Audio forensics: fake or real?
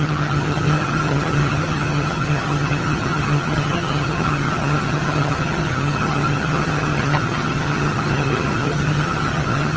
fake